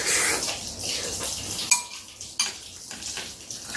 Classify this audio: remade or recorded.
recorded